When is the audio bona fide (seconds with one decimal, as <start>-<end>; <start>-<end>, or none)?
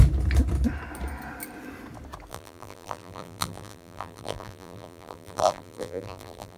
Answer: 0.0-2.3